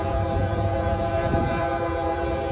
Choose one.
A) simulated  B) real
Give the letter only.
A